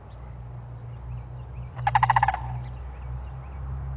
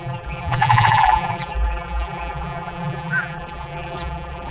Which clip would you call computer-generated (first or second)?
second